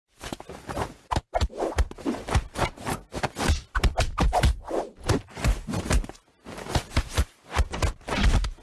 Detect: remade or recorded recorded